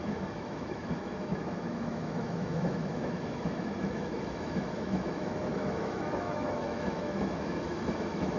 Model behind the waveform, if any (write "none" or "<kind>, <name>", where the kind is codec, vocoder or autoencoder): autoencoder, DAC-VAE